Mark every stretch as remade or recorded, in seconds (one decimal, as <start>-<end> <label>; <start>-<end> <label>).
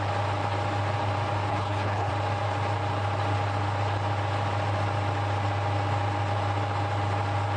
0.0-1.5 recorded; 1.5-2.1 remade; 2.1-7.6 recorded